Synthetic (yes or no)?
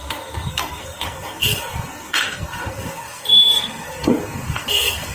yes